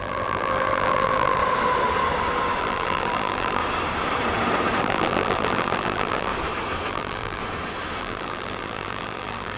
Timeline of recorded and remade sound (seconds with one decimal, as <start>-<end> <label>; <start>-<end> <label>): 0.0-1.4 remade; 1.4-2.6 recorded; 2.6-3.6 remade; 3.6-4.8 recorded; 4.8-6.3 remade; 6.3-6.9 recorded; 6.9-7.4 remade; 7.4-8.0 recorded; 8.0-9.6 remade